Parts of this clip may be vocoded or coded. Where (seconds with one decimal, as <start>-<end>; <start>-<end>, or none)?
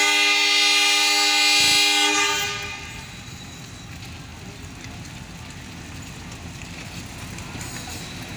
none